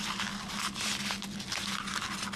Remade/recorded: recorded